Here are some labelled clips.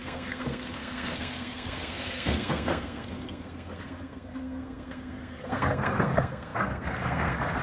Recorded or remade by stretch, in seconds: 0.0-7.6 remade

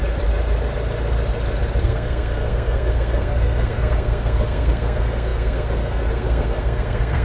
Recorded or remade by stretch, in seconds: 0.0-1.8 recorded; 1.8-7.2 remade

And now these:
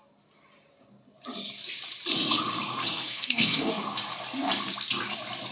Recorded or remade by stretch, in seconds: 0.0-2.8 recorded; 2.8-3.7 remade; 3.7-5.5 recorded